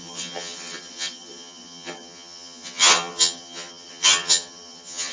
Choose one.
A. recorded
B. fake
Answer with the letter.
B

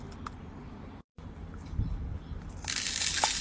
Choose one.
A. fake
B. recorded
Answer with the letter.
B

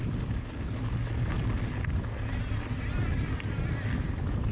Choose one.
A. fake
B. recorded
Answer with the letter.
B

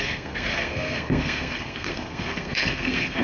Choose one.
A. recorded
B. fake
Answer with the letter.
B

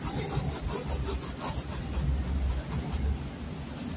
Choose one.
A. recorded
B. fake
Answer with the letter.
A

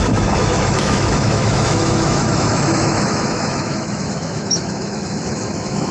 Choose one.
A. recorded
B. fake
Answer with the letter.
B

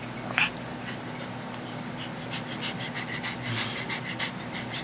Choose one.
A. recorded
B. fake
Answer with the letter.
A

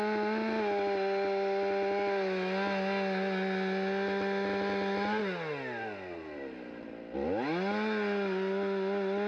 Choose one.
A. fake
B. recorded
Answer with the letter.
B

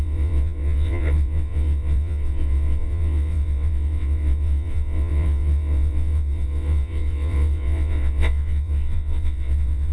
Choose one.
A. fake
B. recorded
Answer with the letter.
A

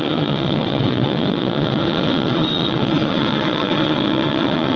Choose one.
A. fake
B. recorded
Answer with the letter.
A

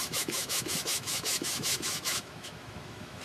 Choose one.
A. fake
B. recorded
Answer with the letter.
A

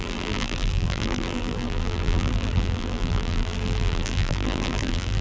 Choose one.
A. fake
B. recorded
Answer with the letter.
A